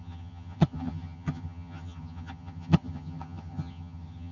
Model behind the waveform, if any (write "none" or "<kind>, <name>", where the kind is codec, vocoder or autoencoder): vocoder, HiFi-GAN